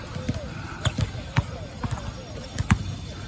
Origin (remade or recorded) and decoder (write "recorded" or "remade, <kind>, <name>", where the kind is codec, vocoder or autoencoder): recorded